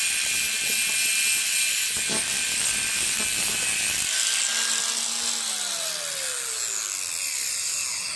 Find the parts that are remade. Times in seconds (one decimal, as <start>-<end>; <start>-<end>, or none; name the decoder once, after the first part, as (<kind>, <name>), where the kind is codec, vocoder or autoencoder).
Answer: none